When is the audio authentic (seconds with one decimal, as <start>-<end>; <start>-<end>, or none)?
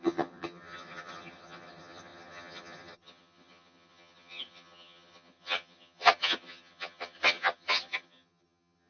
none